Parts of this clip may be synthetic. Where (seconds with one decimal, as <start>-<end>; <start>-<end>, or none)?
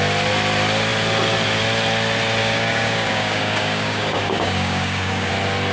2.4-5.3